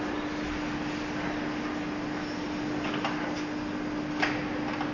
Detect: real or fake real